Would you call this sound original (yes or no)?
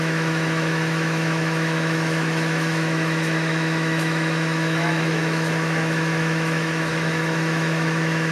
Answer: no